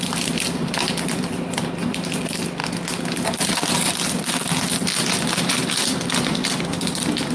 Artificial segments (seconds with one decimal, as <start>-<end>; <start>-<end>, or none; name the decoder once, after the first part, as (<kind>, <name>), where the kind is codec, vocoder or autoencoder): 0.0-2.6 (vocoder, BigVGAN v2); 5.4-7.3